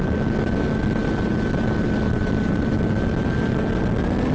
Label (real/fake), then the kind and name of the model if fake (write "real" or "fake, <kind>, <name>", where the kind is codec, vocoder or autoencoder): real